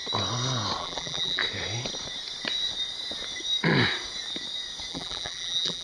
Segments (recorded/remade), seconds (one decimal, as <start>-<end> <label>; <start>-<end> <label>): 0.0-0.8 recorded; 0.8-1.4 remade; 1.4-4.9 recorded; 4.9-5.8 remade